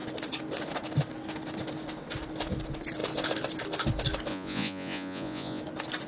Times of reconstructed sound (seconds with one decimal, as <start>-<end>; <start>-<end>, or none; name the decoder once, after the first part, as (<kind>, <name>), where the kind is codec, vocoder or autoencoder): 4.3-5.6 (vocoder, Vocos)